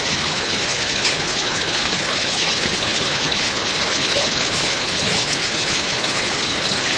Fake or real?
fake